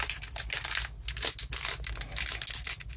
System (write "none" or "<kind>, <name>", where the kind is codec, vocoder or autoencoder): none